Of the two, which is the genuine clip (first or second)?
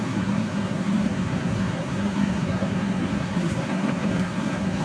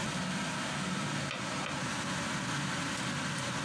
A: second